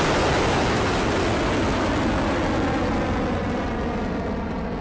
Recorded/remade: recorded